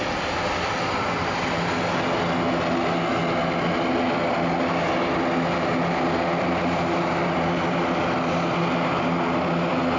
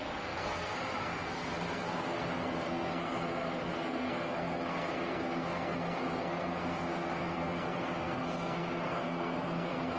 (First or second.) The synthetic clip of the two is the second